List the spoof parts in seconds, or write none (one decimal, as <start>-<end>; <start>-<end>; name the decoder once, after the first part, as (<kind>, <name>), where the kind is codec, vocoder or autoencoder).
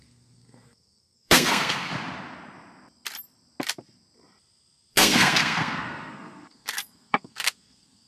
0.0-1.9 (codec, SNAC); 4.9-8.1